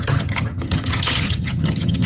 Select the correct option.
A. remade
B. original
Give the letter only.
A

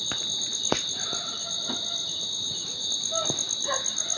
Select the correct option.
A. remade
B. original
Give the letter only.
B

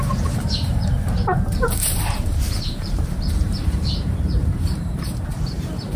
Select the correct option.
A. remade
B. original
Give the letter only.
A